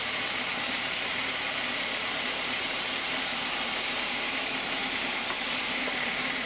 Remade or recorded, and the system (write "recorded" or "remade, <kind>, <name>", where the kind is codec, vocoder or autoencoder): remade, vocoder, BigVGAN v2